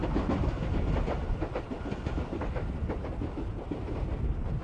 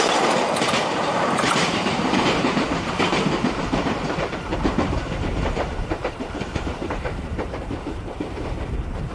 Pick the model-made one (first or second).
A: second